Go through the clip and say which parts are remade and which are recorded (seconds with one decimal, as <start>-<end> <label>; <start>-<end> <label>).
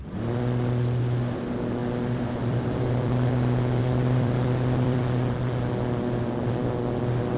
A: 0.0-1.8 recorded; 1.8-3.3 remade; 3.3-3.8 recorded; 3.8-5.0 remade; 5.0-7.4 recorded